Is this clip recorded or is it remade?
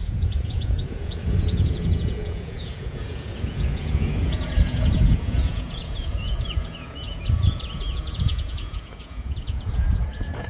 remade